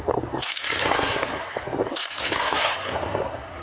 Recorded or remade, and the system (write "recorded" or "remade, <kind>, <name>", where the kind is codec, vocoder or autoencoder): remade, codec, SNAC